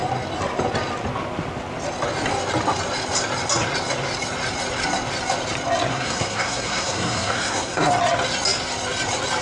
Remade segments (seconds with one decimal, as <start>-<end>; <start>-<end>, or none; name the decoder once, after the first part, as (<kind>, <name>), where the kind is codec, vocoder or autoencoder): 5.9-7.9 (codec, SNAC)